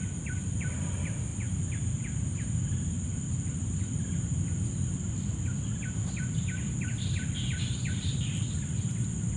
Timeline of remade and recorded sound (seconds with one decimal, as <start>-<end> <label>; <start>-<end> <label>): 0.0-9.4 recorded